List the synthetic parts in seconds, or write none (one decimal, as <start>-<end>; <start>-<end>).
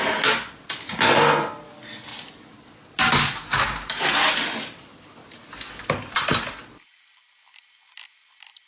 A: none